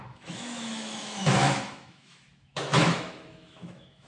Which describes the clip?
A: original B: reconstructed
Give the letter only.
B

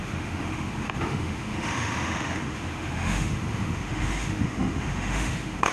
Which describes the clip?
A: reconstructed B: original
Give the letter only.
A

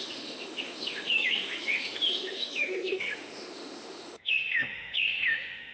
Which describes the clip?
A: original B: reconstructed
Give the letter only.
B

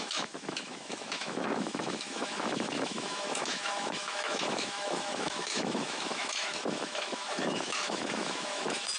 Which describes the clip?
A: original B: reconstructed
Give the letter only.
B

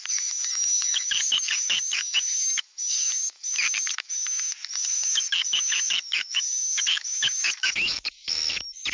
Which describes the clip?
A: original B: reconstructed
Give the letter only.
B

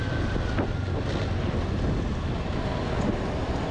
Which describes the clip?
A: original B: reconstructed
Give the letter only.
A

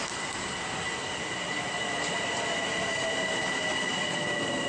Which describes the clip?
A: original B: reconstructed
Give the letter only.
A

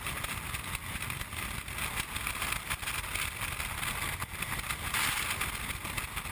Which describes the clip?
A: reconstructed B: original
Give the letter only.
B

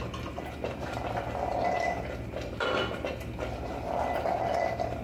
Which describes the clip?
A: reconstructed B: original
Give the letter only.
B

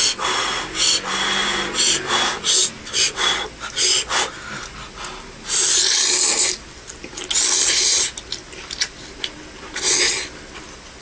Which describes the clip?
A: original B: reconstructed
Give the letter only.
A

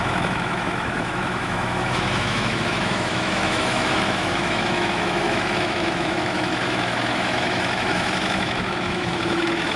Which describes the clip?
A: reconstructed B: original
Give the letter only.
A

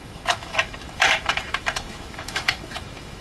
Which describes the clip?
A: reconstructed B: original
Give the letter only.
A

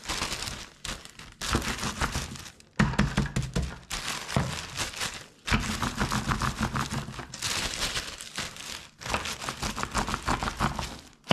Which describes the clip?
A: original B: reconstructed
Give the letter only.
A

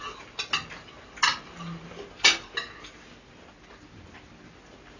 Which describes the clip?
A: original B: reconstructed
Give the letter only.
A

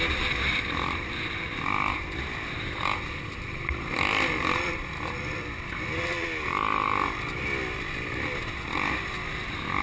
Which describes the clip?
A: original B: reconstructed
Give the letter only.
A